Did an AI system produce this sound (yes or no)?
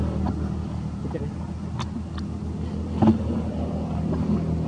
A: no